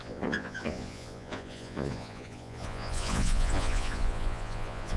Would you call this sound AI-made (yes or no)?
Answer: yes